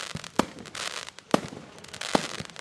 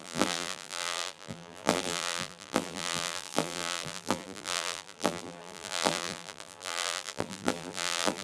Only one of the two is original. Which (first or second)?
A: first